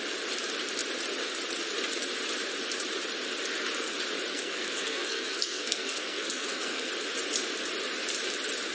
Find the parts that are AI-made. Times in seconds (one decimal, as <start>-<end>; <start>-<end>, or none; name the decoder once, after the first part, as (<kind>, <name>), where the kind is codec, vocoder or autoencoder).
4.3-6.9 (codec, SNAC)